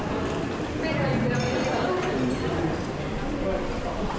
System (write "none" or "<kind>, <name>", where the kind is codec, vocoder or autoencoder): none